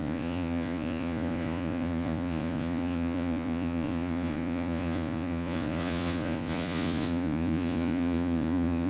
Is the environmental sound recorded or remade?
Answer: remade